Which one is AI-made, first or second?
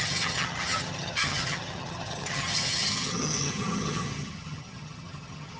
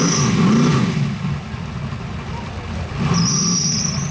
first